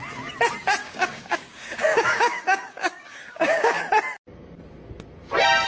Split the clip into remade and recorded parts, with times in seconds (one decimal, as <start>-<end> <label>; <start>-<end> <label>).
0.0-0.8 recorded; 0.8-3.8 remade; 3.8-5.7 recorded